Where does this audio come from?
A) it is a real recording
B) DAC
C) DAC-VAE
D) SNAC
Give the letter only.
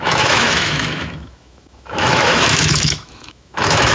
C